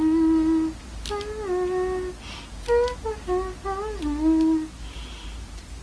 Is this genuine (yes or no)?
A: yes